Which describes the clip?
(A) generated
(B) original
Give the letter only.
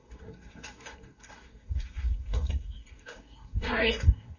A